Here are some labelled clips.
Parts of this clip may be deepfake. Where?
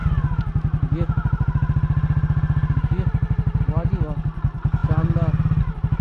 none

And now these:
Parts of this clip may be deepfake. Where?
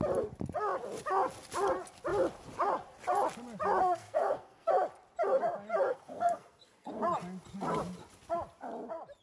4.0-4.7; 5.9-7.0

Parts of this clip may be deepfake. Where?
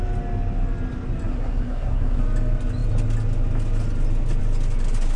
1.3-2.2